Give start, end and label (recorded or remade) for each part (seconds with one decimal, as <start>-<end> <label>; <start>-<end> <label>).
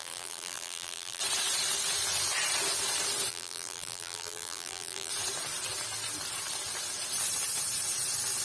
0.0-1.2 remade; 1.2-3.3 recorded; 3.3-5.1 remade; 5.1-8.4 recorded